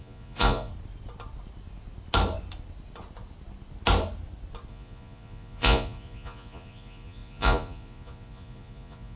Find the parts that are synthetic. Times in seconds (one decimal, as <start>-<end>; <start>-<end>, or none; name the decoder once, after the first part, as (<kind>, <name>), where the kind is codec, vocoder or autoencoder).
0.0-0.7 (vocoder, Vocos); 4.7-9.2